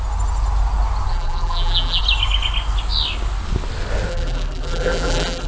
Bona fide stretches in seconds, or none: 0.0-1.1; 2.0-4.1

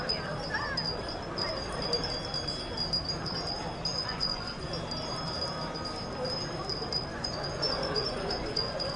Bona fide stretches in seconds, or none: 0.0-3.9; 4.7-7.1

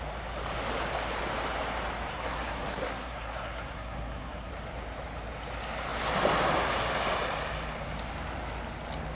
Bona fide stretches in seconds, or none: 0.0-2.1; 4.5-9.1